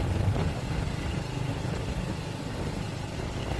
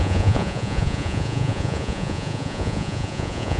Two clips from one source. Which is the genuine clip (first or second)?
first